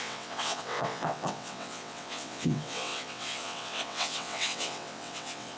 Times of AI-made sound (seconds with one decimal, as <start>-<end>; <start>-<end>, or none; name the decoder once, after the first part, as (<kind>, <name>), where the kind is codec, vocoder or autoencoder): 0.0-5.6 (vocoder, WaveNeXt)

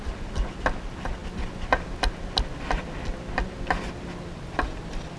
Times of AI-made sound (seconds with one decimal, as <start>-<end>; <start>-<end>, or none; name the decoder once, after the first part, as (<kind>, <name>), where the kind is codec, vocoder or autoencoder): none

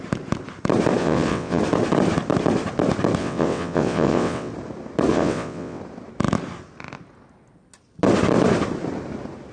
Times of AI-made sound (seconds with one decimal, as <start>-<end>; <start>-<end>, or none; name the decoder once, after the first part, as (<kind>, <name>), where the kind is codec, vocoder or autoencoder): 1.0-1.6 (vocoder, WaveNeXt); 3.2-4.5; 5.1-5.8